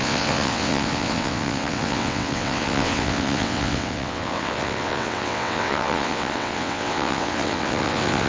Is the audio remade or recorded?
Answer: remade